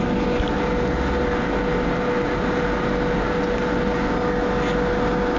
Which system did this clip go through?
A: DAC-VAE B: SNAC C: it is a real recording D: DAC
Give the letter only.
C